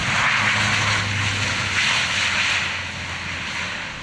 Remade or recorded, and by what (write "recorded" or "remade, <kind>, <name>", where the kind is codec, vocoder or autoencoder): recorded